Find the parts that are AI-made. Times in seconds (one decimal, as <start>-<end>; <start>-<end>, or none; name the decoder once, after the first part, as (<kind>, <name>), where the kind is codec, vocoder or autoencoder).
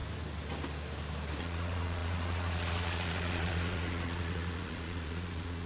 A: 1.4-5.7 (vocoder, Vocos)